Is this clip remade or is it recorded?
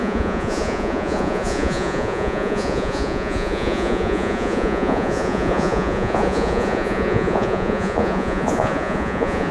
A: remade